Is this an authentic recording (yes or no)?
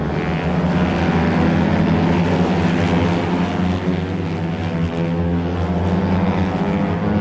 yes